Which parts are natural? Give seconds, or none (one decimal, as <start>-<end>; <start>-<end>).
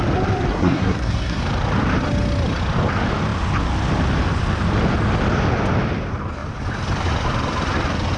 0.0-0.5; 1.4-8.2